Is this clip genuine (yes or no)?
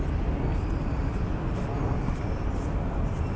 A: yes